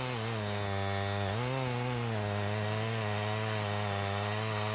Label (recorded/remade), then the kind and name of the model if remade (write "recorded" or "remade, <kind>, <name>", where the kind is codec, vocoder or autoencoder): recorded